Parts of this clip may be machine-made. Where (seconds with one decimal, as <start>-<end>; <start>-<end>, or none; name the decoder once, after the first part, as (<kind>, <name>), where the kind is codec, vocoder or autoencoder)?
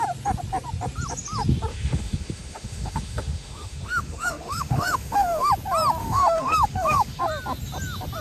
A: 1.7-5.5 (autoencoder, DAC-VAE); 6.0-7.2